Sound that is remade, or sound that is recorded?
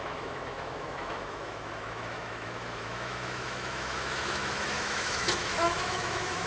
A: remade